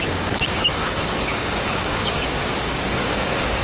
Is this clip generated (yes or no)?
yes